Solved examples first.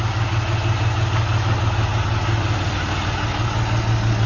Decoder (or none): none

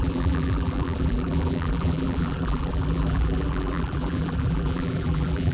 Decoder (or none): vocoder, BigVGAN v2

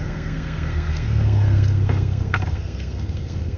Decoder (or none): codec, SNAC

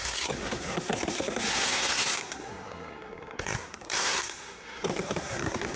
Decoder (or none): codec, SNAC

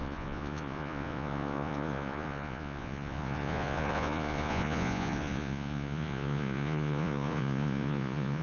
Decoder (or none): vocoder, Vocos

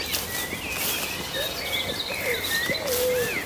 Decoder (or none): none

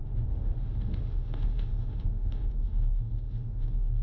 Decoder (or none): autoencoder, DAC-VAE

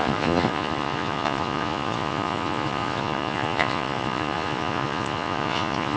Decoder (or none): vocoder, Vocos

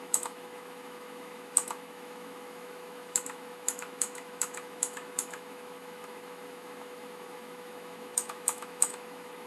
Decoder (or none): autoencoder, DAC-VAE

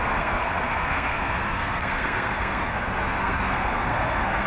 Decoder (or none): codec, SNAC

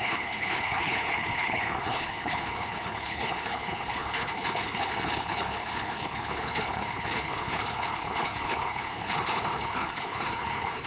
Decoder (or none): codec, HILCodec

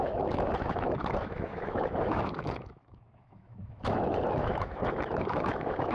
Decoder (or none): autoencoder, DAC-VAE